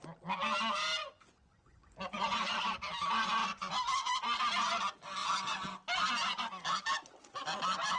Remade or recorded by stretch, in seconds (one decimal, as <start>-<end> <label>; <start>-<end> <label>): 0.0-1.0 recorded; 1.0-2.6 remade; 2.6-3.4 recorded; 3.4-4.4 remade; 4.4-8.0 recorded